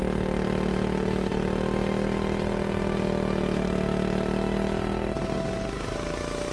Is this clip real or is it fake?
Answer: real